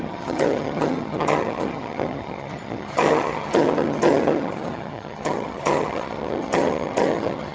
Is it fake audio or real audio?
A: fake